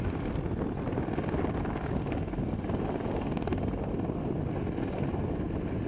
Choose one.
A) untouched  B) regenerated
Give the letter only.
A